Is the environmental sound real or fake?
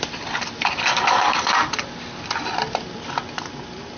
fake